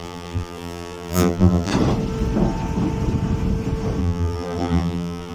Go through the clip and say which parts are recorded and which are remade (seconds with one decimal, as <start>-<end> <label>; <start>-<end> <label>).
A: 0.0-1.7 remade; 1.7-4.0 recorded; 4.0-5.3 remade